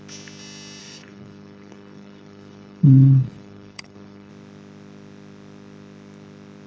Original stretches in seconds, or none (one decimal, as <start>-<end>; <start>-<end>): 0.0-0.8; 4.3-6.7